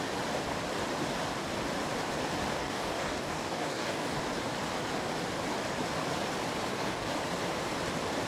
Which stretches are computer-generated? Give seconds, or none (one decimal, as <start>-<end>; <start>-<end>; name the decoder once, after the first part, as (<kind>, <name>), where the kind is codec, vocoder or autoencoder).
2.6-4.2 (codec, DAC); 6.7-7.2